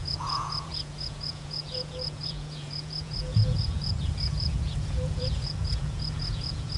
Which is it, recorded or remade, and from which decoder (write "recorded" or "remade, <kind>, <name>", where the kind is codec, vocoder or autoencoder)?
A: remade, vocoder, Vocos